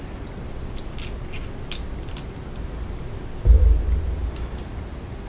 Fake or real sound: real